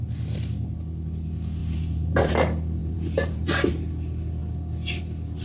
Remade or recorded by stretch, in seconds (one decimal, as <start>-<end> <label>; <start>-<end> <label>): 0.0-1.6 recorded; 1.6-2.3 remade; 2.3-2.8 recorded; 2.8-3.7 remade; 3.7-5.4 recorded